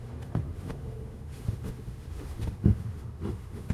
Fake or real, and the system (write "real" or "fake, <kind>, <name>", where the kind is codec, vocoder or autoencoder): fake, autoencoder, DAC-VAE